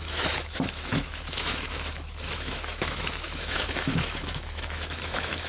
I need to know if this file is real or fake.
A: fake